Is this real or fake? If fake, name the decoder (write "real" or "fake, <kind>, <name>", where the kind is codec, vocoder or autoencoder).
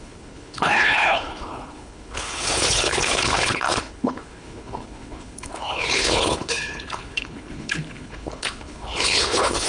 fake, codec, HILCodec